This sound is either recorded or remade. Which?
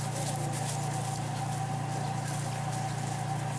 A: recorded